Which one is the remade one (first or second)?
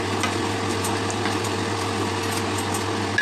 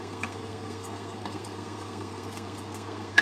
second